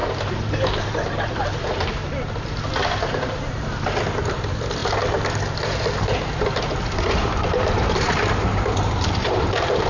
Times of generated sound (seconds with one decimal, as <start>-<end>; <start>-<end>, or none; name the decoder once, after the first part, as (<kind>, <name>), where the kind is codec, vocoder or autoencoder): 0.0-2.0 (vocoder, BigVGAN v2); 3.0-4.8; 5.6-9.9